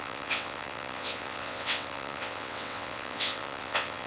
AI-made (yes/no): yes